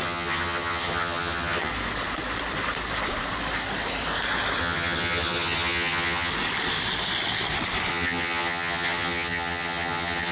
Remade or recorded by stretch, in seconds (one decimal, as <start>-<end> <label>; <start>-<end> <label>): 0.0-1.7 remade; 1.7-4.6 recorded; 4.6-6.3 remade; 6.3-7.9 recorded; 7.9-10.3 remade